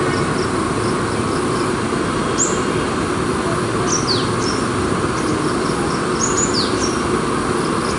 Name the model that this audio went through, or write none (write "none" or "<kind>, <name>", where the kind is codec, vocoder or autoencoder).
none